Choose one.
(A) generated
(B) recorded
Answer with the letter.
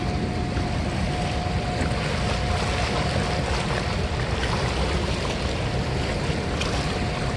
B